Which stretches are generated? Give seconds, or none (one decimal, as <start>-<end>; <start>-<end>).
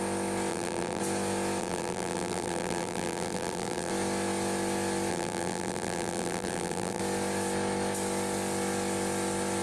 0.5-1.0; 1.6-3.9; 5.1-7.0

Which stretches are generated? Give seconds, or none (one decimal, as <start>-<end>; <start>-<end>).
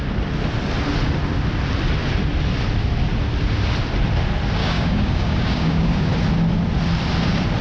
4.6-6.1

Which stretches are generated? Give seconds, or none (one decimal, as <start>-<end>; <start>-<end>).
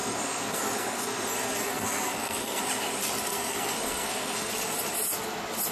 0.0-2.6; 3.3-4.5